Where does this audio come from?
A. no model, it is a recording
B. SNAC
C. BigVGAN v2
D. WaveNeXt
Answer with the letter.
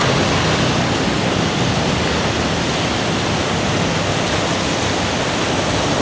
A